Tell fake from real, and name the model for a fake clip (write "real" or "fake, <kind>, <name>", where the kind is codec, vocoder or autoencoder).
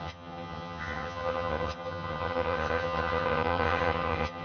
fake, vocoder, HiFi-GAN